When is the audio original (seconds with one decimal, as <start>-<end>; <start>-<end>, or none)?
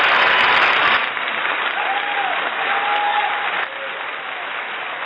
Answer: 0.0-5.1